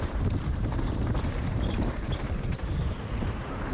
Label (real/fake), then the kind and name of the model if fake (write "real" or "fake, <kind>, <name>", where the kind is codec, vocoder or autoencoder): fake, vocoder, BigVGAN v2